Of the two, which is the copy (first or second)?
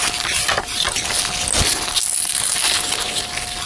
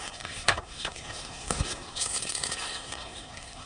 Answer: second